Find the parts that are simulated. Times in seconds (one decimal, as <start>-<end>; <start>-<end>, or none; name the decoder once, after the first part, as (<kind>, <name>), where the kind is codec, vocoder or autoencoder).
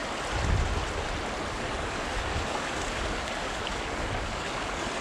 1.5-5.0 (codec, DAC)